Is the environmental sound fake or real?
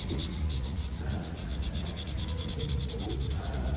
fake